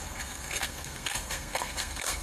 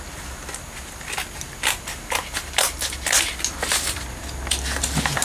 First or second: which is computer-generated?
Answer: first